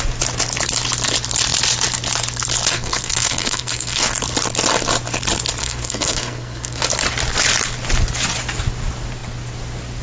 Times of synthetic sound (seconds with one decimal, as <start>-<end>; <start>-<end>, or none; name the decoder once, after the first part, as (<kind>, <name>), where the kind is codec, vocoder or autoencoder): 2.7-4.1 (codec, SNAC); 5.6-6.8